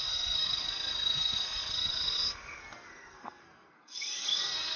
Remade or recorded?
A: remade